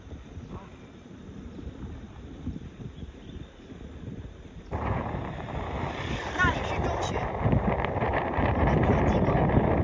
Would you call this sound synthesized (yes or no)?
yes